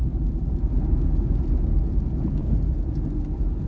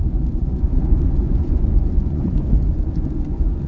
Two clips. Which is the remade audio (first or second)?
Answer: second